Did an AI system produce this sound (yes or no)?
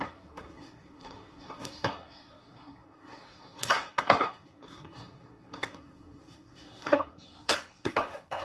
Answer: yes